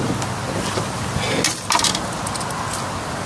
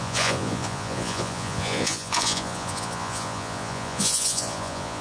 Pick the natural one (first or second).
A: first